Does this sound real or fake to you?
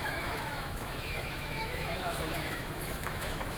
fake